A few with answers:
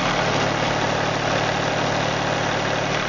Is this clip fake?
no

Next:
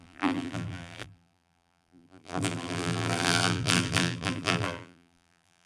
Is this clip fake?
yes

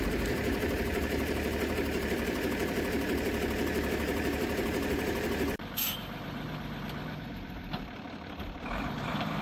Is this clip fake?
yes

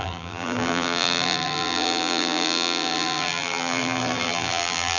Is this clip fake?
yes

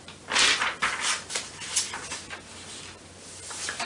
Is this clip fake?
no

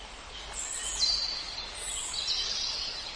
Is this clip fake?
no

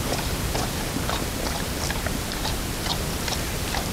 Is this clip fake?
no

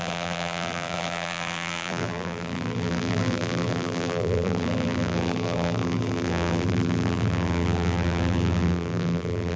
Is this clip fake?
yes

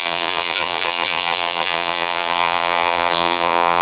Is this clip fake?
yes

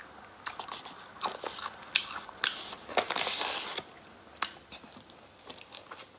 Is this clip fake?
no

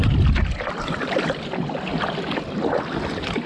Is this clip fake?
no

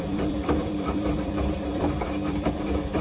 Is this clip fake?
yes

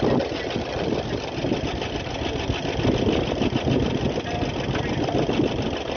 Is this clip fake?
no